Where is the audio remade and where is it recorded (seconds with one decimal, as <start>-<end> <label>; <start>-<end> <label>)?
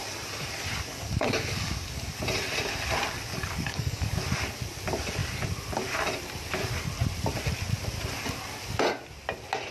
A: 0.0-0.9 recorded; 0.9-2.1 remade; 2.1-3.3 recorded; 3.3-4.2 remade; 4.2-9.7 recorded